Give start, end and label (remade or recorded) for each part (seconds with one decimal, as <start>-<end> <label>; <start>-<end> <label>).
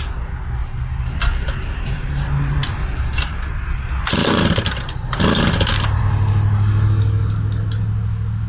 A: 0.0-0.6 recorded; 0.6-2.1 remade; 2.1-4.2 recorded; 4.2-6.0 remade; 6.0-8.5 recorded